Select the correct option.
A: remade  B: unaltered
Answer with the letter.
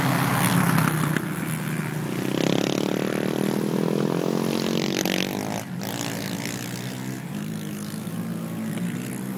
B